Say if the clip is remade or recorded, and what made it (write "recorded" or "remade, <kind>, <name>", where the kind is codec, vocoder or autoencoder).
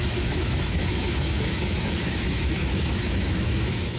remade, autoencoder, DAC-VAE